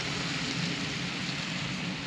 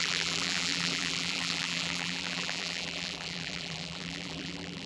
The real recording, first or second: first